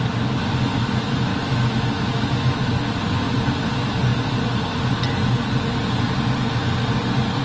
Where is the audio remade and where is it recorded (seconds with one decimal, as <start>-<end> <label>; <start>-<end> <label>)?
0.0-1.3 recorded; 1.3-2.6 remade; 2.6-7.4 recorded